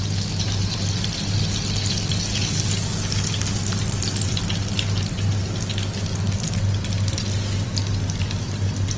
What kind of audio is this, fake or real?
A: real